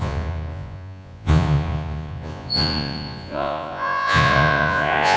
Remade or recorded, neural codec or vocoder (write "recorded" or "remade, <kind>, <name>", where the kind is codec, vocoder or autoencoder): remade, vocoder, Vocos